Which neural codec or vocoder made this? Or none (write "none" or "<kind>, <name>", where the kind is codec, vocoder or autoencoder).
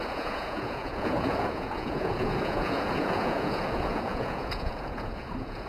vocoder, Vocos